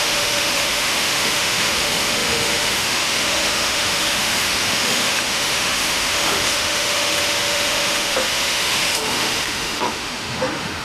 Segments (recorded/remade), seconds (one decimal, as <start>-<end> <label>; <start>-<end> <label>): 0.0-10.8 remade